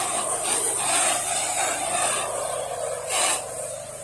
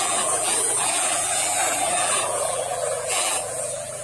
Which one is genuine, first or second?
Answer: first